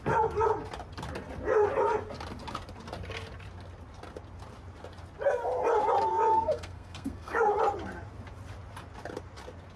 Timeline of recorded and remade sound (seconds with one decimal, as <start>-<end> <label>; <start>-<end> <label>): 0.0-6.1 recorded; 6.1-7.5 remade; 7.5-9.8 recorded